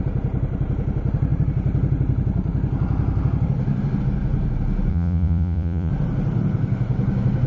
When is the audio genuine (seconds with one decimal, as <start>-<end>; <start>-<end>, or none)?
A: 0.0-4.9; 5.9-7.5